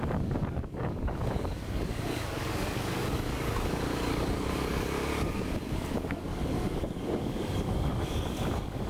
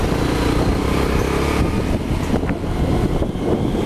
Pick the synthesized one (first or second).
first